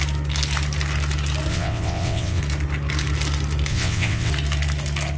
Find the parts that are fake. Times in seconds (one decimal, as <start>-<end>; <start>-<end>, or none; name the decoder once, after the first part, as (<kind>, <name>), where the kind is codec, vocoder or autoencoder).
1.5-2.4 (vocoder, WaveNeXt); 3.7-4.3